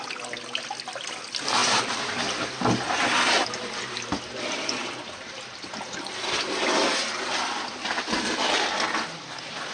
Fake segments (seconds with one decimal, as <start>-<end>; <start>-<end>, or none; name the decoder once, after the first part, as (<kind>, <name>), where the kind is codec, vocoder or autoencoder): 1.6-2.1 (vocoder, BigVGAN v2); 4.8-6.4